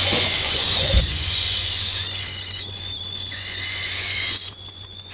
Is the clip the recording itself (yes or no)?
no